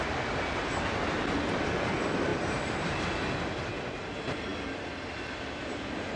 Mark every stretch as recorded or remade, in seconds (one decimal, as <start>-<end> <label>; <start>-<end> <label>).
0.0-2.3 recorded; 2.3-3.4 remade; 3.4-6.2 recorded